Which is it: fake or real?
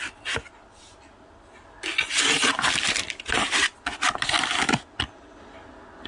real